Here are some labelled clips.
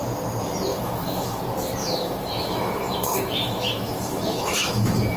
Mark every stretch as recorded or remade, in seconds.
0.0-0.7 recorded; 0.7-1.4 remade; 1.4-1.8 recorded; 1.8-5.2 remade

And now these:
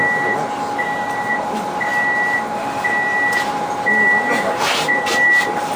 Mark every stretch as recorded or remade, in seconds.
0.0-5.8 recorded

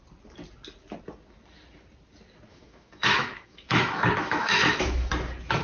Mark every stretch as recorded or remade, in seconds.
0.0-2.5 recorded; 2.5-5.1 remade; 5.1-5.6 recorded